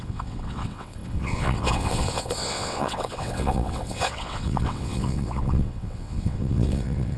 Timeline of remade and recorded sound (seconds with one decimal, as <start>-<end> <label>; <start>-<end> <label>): 0.0-7.2 remade